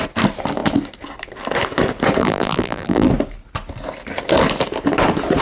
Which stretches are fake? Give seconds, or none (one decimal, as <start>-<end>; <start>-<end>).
2.2-3.1